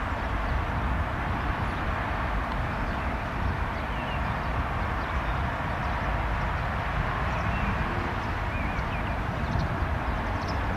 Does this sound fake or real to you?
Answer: real